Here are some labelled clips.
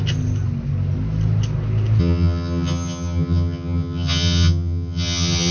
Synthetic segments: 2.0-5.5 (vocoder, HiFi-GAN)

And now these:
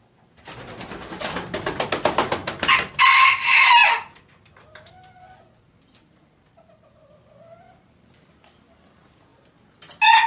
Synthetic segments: none

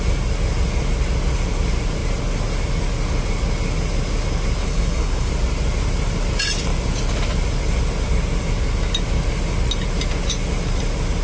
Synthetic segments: 4.6-5.3 (codec, HILCodec)